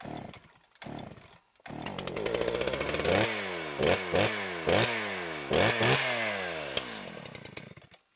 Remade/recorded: recorded